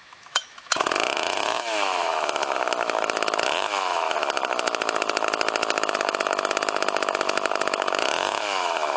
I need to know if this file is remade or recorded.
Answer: remade